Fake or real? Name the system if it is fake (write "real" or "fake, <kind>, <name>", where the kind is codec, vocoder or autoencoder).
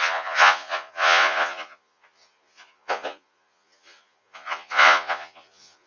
fake, vocoder, Vocos